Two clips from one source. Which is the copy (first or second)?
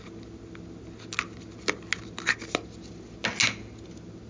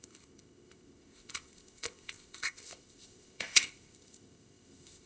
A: second